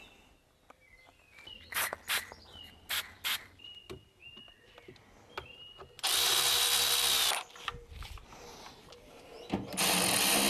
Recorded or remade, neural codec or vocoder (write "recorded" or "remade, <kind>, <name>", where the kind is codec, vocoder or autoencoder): recorded